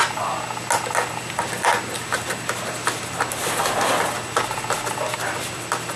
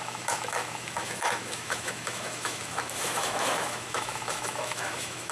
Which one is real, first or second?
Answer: first